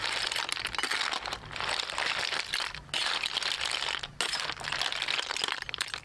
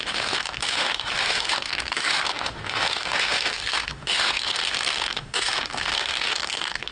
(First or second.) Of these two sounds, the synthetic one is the second